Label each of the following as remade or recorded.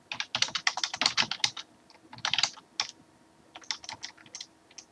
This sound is recorded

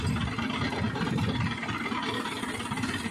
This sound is recorded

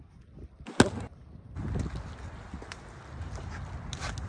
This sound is recorded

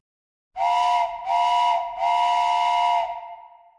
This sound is recorded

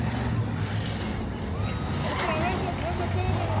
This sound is recorded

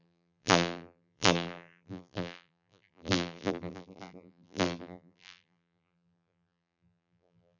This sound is remade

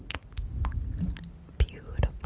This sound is recorded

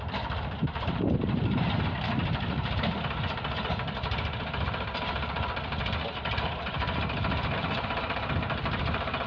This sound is remade